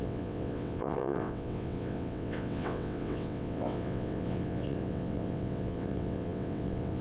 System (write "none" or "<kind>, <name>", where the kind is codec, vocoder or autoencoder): vocoder, WaveNeXt